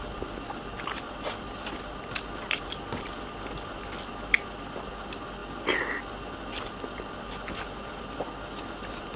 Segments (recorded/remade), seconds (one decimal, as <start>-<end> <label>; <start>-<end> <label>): 0.0-9.2 recorded